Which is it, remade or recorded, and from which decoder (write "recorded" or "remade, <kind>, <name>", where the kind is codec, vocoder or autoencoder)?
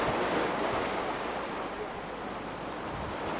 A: recorded